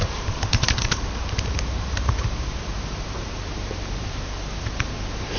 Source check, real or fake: fake